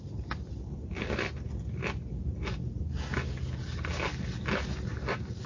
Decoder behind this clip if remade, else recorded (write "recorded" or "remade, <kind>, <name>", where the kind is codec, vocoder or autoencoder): recorded